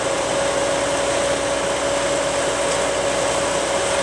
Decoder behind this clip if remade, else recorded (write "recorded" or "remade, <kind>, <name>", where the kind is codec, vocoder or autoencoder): recorded